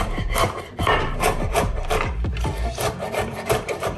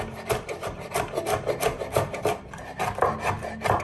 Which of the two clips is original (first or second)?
second